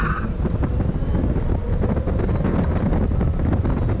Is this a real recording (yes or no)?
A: yes